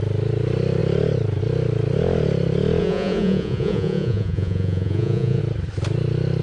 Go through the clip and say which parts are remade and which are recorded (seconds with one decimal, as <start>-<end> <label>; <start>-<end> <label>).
0.0-2.8 recorded; 2.8-5.4 remade; 5.4-6.4 recorded